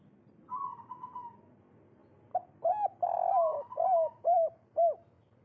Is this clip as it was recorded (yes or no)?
yes